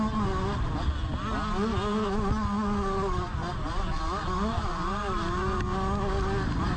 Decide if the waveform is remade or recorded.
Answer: recorded